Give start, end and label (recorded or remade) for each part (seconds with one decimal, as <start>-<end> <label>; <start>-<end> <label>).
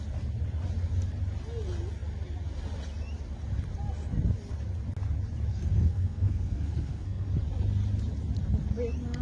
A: 0.0-5.5 recorded; 5.5-7.3 remade; 7.3-9.2 recorded